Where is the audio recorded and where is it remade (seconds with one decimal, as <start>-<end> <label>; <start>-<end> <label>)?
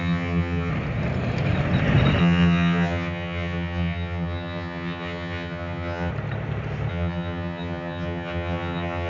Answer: 0.0-0.7 remade; 0.7-2.2 recorded; 2.2-6.1 remade; 6.1-6.9 recorded; 6.9-9.1 remade